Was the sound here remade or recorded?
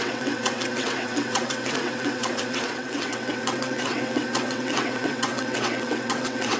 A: remade